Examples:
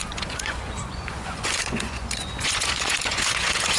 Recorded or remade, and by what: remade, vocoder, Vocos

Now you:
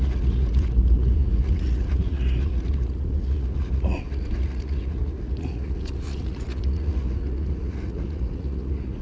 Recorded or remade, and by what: remade, vocoder, Vocos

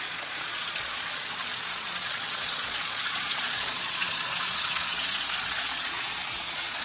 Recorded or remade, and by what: remade, vocoder, Vocos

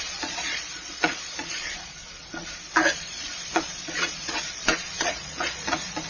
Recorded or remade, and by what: remade, vocoder, Vocos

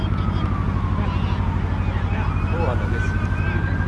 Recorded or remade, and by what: recorded